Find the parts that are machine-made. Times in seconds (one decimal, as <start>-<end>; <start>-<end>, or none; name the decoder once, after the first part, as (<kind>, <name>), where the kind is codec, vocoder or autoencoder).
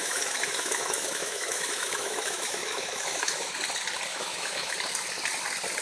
0.0-3.5 (autoencoder, DAC-VAE); 4.1-4.7